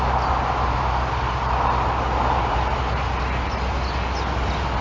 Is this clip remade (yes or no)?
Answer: no